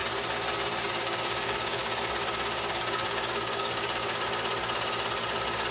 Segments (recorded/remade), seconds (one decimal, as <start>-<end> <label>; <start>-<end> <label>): 0.0-0.9 recorded; 0.9-1.8 remade; 1.8-2.7 recorded; 2.7-4.0 remade; 4.0-5.7 recorded